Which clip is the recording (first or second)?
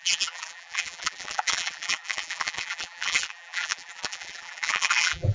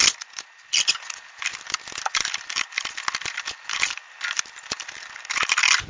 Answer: second